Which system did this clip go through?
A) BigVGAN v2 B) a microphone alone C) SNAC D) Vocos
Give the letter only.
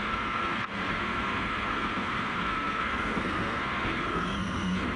C